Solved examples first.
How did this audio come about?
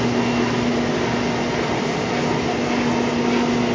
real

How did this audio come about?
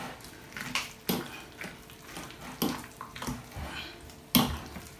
real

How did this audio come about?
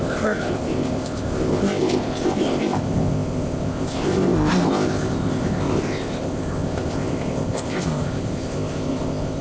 fake